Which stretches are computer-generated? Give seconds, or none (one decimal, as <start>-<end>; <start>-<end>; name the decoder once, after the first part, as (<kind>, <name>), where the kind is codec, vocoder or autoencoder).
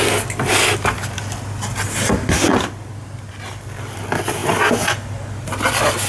none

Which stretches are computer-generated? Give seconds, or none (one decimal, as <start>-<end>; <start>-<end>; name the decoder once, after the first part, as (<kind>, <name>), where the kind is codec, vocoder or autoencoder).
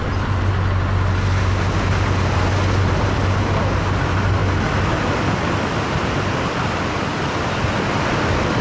none